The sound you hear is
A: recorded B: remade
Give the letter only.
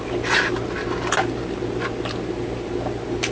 A